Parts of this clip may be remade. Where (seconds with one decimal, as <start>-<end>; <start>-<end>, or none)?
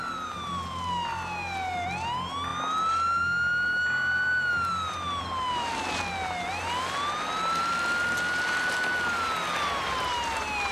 none